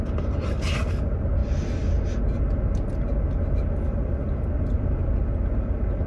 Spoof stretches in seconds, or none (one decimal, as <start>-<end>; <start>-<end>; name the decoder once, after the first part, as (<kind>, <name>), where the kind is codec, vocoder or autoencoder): none